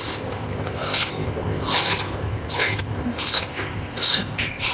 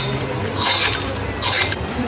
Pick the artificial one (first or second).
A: first